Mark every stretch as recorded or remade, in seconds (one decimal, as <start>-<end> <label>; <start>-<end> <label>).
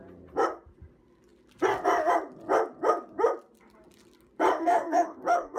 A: 0.0-4.6 recorded; 4.6-5.6 remade